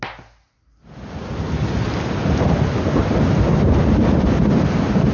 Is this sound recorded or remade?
recorded